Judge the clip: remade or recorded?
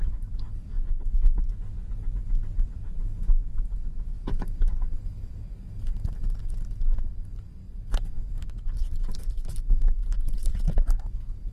recorded